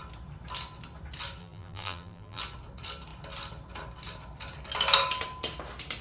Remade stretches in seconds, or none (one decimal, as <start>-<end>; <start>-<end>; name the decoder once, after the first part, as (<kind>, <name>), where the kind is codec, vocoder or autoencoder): 1.4-2.4 (vocoder, BigVGAN v2)